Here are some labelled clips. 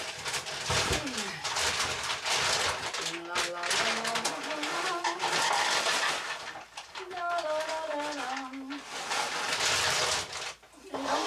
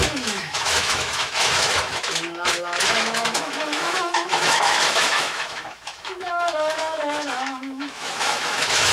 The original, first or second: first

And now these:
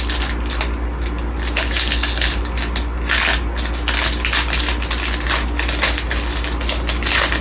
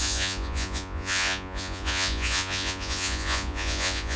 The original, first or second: first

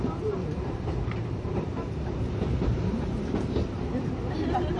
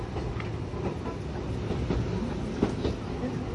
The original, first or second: second